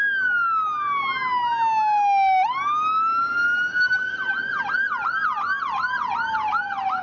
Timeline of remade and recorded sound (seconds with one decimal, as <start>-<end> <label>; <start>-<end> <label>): 0.0-7.0 recorded